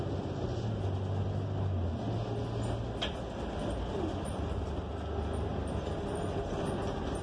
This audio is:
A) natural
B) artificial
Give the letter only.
A